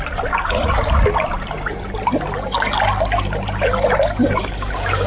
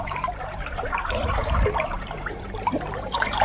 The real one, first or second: first